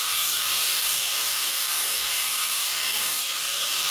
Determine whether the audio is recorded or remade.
remade